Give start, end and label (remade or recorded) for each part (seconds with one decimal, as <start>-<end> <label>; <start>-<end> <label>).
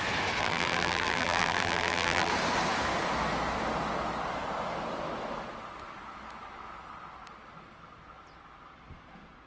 0.0-0.4 recorded; 0.4-2.3 remade; 2.3-9.5 recorded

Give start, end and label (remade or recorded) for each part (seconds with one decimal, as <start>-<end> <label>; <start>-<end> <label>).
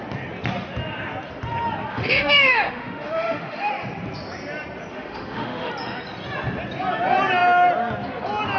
0.0-1.9 recorded; 1.9-3.7 remade; 3.7-4.9 recorded; 4.9-5.7 remade; 5.7-8.6 recorded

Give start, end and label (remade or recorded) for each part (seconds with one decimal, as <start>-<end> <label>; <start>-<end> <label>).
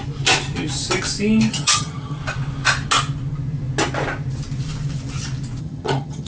0.0-1.5 recorded; 1.5-2.2 remade; 2.2-5.6 recorded; 5.6-6.3 remade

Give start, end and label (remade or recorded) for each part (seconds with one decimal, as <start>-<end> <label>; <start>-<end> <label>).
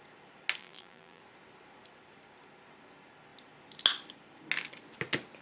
0.0-0.6 recorded; 0.6-1.2 remade; 1.2-5.4 recorded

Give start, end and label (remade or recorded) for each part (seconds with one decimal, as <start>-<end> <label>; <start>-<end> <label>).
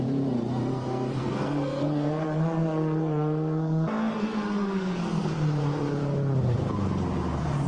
0.0-0.7 recorded; 0.7-5.3 remade; 5.3-7.7 recorded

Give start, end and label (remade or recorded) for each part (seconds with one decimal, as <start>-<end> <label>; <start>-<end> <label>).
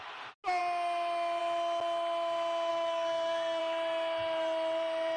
0.0-2.7 recorded; 2.7-3.6 remade; 3.6-5.2 recorded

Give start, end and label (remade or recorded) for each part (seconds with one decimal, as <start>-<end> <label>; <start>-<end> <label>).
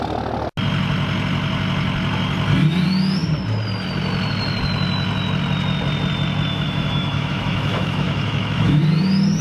0.0-6.5 recorded; 6.5-8.8 remade; 8.8-9.4 recorded